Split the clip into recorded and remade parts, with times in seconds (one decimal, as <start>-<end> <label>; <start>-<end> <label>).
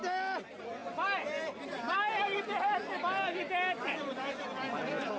0.0-5.2 recorded